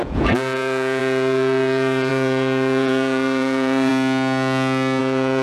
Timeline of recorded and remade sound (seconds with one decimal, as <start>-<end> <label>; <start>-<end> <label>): 0.0-3.9 remade; 3.9-5.0 recorded; 5.0-5.4 remade